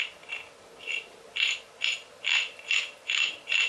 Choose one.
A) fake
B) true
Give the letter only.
B